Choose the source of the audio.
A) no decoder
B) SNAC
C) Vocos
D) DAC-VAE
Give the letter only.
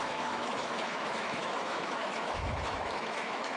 D